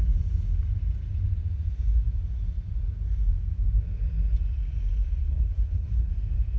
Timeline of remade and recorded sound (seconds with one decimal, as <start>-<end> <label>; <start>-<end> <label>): 0.0-5.2 recorded; 5.2-6.1 remade; 6.1-6.6 recorded